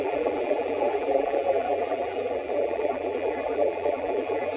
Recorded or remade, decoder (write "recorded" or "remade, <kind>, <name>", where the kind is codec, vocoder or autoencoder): remade, vocoder, BigVGAN v2